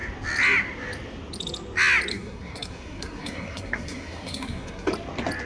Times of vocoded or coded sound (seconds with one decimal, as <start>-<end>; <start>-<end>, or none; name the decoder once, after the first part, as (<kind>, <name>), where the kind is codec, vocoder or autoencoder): 2.1-4.9 (codec, SNAC)